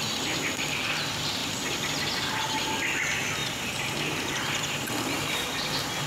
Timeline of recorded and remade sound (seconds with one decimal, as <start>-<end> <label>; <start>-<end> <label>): 0.0-3.4 recorded; 3.4-4.7 remade; 4.7-6.1 recorded